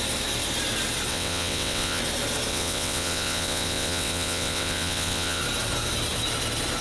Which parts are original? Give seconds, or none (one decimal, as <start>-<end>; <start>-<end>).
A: 0.0-1.1; 2.0-2.5; 5.4-6.8